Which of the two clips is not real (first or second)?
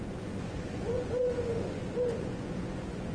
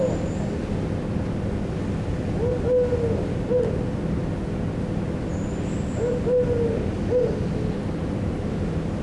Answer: first